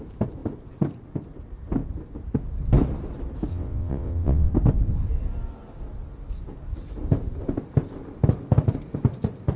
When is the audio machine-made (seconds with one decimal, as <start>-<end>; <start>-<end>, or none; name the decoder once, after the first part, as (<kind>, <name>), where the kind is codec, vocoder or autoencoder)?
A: 3.5-4.5 (vocoder, WaveNeXt)